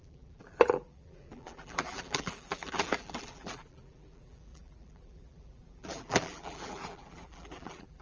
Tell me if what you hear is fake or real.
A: fake